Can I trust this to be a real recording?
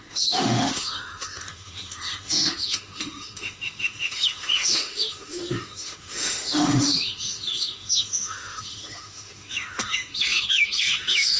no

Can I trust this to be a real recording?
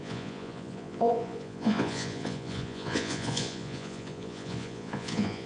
no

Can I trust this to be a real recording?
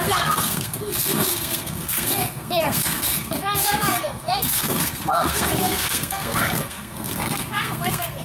no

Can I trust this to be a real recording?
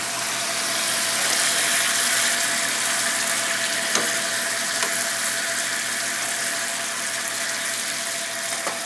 yes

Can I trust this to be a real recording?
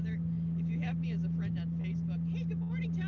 yes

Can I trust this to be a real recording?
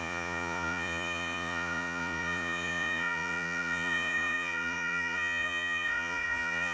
no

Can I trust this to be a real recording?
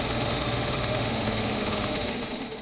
no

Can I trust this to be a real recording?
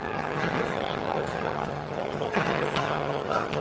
no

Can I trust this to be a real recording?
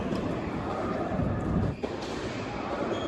no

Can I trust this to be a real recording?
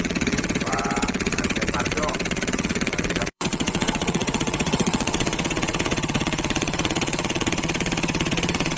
no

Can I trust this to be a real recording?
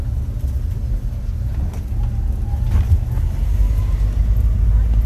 yes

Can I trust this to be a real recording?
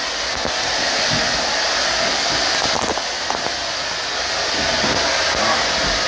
yes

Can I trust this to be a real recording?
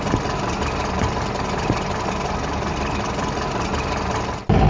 yes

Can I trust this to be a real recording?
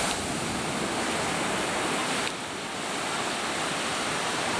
no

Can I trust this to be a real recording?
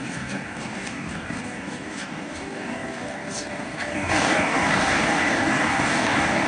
no